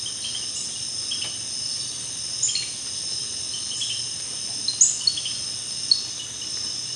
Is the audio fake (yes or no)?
no